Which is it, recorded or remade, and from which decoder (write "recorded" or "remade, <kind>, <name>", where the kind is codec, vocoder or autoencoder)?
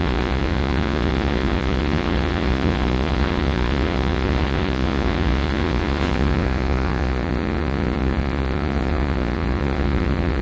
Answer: remade, vocoder, Vocos